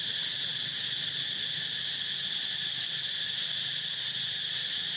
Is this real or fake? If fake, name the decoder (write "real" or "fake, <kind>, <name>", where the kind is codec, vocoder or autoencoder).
real